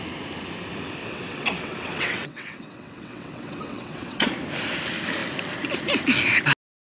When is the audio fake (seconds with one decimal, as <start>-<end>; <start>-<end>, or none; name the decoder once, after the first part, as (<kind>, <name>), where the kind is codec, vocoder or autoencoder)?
1.0-4.3 (vocoder, WaveNeXt)